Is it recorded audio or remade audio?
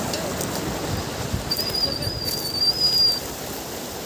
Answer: recorded